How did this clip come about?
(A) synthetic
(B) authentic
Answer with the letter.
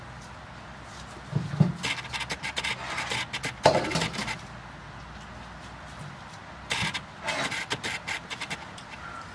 B